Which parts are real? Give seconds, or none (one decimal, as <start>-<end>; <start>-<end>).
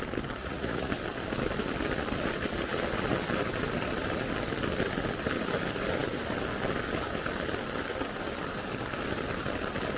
0.0-0.4; 0.9-10.0